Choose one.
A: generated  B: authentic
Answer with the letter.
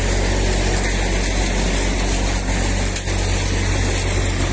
B